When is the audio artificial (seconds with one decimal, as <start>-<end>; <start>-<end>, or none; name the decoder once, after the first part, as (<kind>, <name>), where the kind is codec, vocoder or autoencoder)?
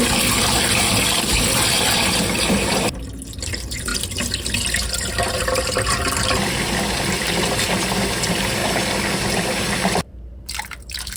0.0-3.9 (vocoder, BigVGAN v2); 4.9-8.6; 9.6-11.2